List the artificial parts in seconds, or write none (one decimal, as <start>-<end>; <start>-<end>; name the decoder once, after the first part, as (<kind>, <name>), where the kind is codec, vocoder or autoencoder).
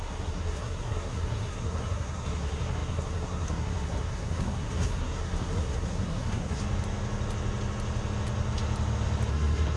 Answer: 0.0-6.6 (codec, SNAC); 9.3-9.8